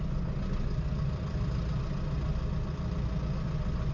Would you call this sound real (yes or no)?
yes